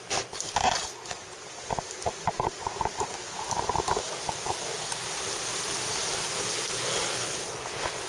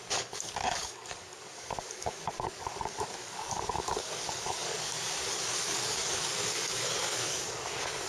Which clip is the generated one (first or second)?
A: second